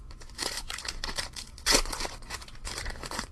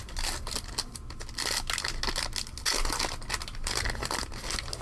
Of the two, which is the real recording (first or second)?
second